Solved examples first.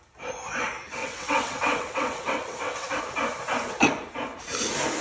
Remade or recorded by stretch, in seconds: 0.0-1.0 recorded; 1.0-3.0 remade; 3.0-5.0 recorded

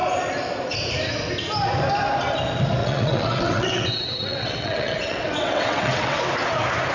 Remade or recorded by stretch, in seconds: 0.0-2.8 recorded; 2.8-6.2 remade; 6.2-6.9 recorded

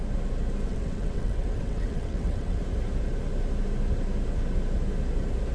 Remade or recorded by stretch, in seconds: 0.0-0.7 recorded; 0.7-2.6 remade; 2.6-5.5 recorded

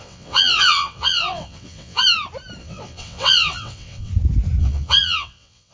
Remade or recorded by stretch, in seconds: 0.0-2.0 remade; 2.0-2.6 recorded; 2.6-4.1 remade; 4.1-4.6 recorded; 4.6-5.7 remade

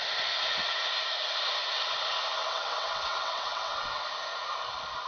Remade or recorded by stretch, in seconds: 0.0-2.4 recorded; 2.4-4.0 remade; 4.0-5.1 recorded

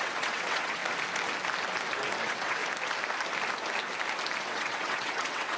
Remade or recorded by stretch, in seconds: 0.0-0.8 remade; 0.8-2.2 recorded; 2.2-2.6 remade; 2.6-4.4 recorded; 4.4-5.6 remade

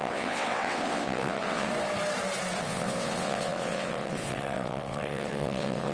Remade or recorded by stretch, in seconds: 0.0-1.7 remade; 1.7-2.6 recorded; 2.6-5.9 remade

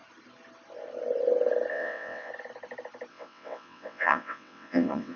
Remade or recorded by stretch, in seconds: 0.0-1.7 recorded; 1.7-2.3 remade; 2.3-3.1 recorded; 3.1-5.2 remade